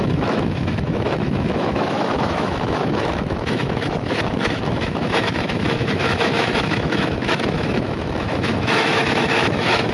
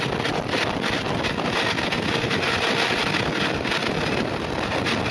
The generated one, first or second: first